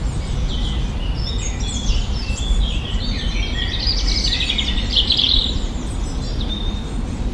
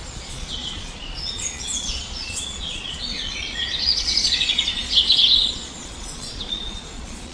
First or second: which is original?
first